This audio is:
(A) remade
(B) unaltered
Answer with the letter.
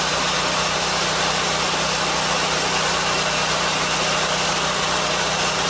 B